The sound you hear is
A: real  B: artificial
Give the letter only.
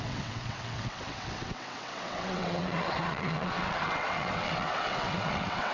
B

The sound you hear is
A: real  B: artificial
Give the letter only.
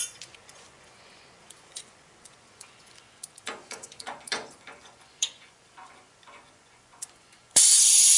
B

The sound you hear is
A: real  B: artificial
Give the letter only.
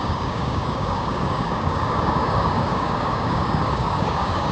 B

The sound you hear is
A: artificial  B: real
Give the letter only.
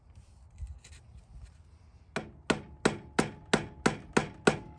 B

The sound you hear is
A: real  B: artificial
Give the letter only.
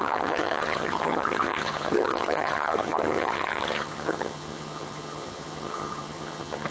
B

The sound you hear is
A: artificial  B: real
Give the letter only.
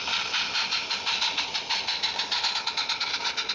B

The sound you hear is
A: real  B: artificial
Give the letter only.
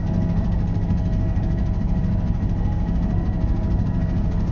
B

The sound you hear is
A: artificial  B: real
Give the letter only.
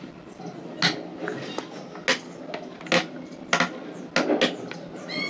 B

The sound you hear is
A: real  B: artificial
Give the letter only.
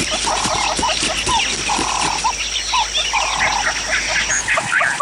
A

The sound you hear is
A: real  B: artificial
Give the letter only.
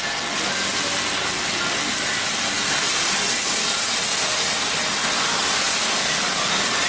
A